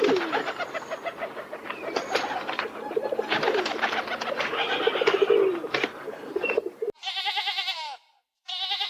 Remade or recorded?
recorded